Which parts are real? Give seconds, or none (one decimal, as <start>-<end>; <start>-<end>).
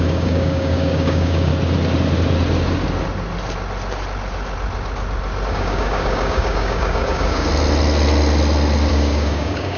1.5-5.5; 7.5-8.9